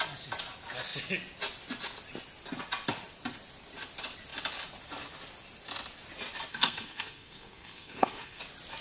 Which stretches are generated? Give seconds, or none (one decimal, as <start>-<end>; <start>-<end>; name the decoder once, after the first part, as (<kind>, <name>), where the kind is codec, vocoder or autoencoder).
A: 6.5-8.4 (codec, SNAC)